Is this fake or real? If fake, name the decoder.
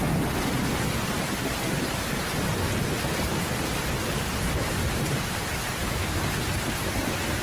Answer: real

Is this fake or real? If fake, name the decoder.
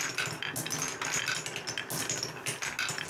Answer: real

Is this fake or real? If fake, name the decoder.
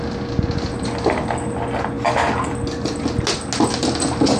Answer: real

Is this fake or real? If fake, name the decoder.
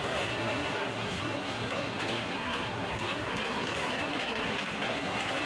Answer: fake, codec, SNAC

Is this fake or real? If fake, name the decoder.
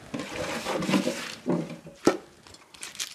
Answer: real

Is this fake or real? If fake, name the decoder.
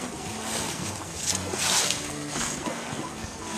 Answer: fake, codec, SNAC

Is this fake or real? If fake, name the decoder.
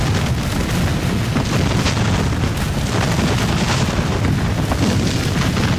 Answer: real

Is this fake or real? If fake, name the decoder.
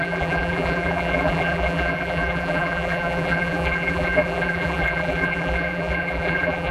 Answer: fake, vocoder, BigVGAN v2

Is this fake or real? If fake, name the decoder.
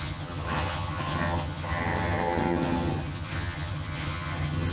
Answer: fake, vocoder, HiFi-GAN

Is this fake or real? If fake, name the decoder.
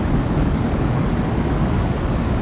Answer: fake, codec, DAC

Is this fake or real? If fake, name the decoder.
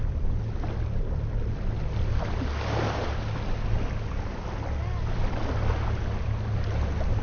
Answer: real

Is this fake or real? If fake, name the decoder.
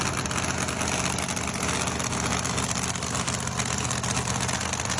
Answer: real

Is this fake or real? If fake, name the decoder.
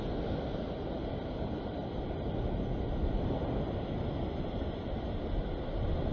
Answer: real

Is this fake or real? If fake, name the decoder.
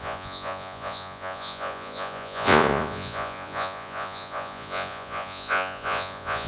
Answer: fake, vocoder, Vocos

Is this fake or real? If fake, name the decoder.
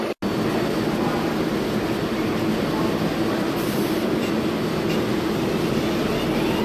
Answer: real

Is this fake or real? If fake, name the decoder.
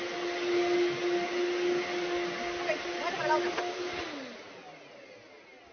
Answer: real